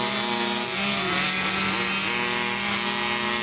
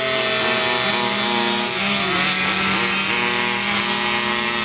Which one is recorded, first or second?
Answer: first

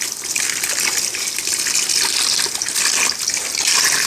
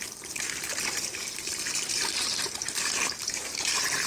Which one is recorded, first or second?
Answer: first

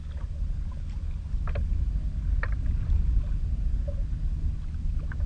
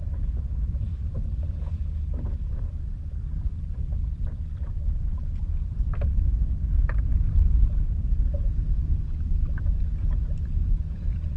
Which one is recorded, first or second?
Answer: first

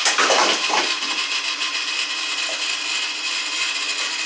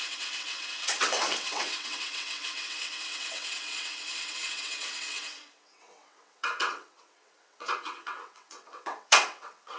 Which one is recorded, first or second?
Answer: first